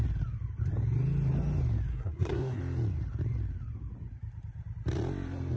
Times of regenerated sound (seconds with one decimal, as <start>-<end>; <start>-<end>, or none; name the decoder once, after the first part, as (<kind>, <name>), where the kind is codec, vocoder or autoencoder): 1.9-2.6 (codec, SNAC)